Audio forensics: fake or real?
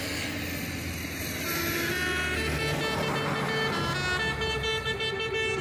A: real